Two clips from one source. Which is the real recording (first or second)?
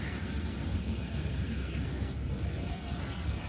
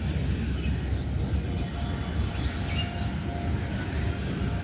second